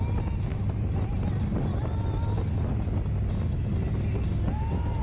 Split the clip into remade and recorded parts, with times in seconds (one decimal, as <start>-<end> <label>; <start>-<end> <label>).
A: 0.0-5.0 recorded